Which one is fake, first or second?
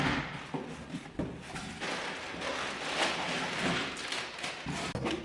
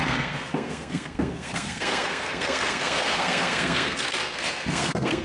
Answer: second